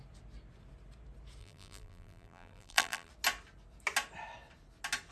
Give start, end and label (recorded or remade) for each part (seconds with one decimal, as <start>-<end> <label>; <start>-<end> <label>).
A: 0.0-1.4 recorded; 1.4-3.1 remade; 3.1-5.1 recorded